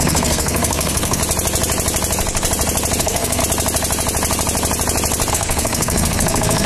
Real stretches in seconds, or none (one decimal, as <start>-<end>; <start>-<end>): 1.2-3.0; 3.4-5.3